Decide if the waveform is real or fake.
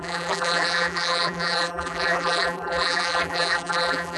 fake